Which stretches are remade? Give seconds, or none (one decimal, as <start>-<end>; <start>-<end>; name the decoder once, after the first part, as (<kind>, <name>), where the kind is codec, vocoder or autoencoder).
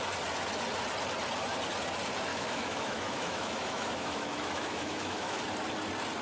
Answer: 2.3-5.4 (autoencoder, DAC-VAE)